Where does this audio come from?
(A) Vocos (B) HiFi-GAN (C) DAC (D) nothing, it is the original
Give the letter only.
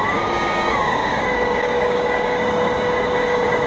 C